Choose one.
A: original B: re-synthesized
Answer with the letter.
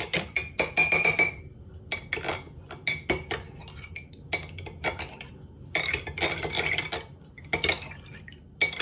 A